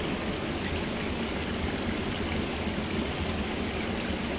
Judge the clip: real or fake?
real